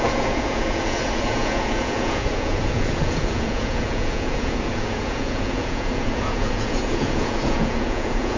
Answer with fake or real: fake